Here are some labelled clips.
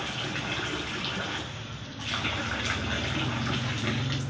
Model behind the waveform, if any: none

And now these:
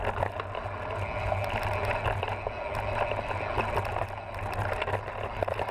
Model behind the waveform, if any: none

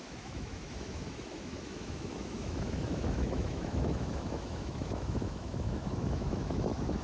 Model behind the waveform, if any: autoencoder, DAC-VAE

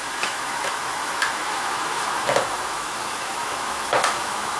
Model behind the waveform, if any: autoencoder, DAC-VAE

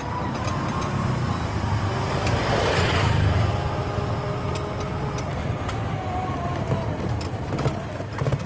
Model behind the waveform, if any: none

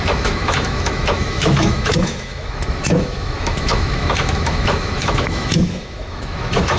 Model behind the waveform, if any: autoencoder, DAC-VAE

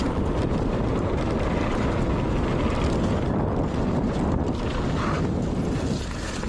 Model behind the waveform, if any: none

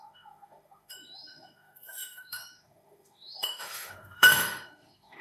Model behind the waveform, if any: autoencoder, DAC-VAE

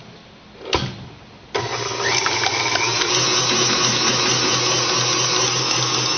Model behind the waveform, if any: none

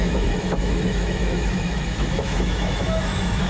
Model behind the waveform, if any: autoencoder, DAC-VAE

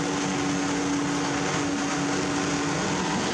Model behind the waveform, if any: none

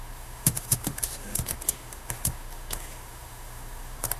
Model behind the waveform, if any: autoencoder, DAC-VAE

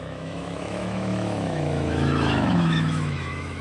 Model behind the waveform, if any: autoencoder, DAC-VAE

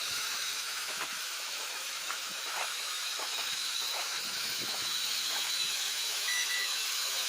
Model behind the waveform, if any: autoencoder, DAC-VAE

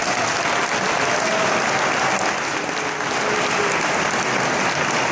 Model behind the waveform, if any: none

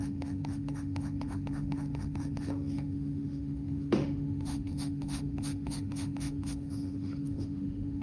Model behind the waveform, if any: autoencoder, DAC-VAE